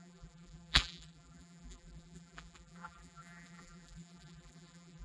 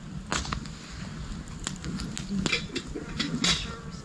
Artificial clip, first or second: first